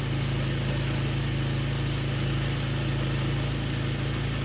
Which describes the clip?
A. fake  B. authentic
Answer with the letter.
B